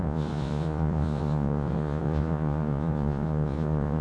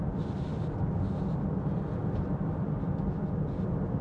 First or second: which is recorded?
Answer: second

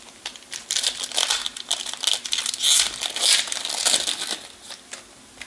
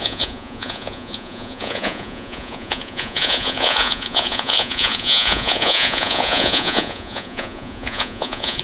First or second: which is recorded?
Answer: first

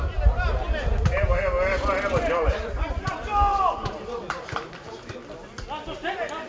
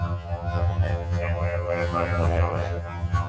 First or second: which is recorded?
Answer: first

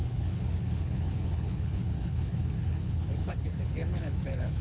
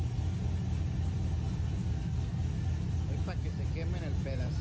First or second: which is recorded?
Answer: second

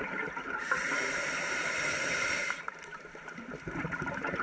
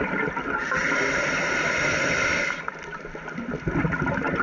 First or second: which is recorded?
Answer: second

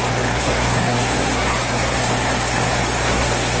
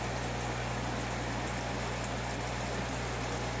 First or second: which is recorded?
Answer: second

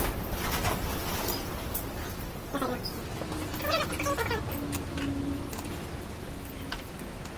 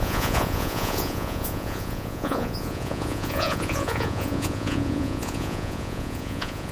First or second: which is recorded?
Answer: first